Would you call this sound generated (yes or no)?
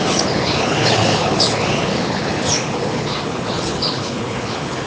yes